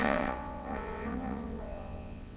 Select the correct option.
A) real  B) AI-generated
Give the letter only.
B